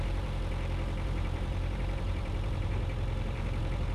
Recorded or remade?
remade